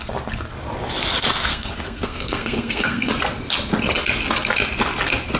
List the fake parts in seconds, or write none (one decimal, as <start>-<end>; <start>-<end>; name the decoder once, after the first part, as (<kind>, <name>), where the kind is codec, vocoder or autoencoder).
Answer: 1.5-3.1 (codec, SNAC)